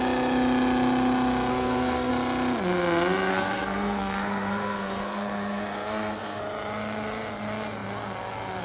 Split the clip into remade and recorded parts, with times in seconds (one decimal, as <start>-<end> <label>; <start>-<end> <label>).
0.0-1.5 recorded; 1.5-2.1 remade; 2.1-3.3 recorded; 3.3-6.4 remade; 6.4-8.6 recorded